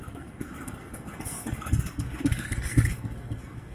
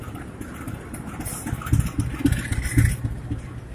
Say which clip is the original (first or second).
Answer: second